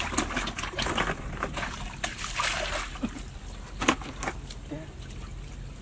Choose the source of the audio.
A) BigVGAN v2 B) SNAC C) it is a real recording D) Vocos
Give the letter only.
C